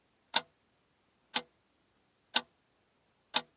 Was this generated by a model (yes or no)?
no